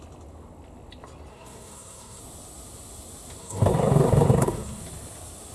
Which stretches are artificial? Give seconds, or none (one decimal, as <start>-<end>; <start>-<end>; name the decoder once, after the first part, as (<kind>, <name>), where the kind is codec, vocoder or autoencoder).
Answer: 1.3-2.2 (codec, SNAC); 3.4-4.8